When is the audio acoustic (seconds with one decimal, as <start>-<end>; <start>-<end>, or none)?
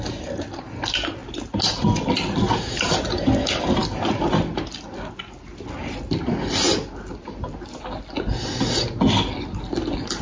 0.0-10.2